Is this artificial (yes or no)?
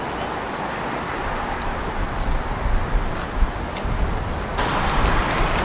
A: no